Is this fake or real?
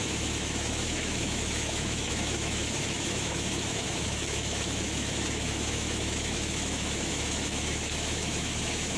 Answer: fake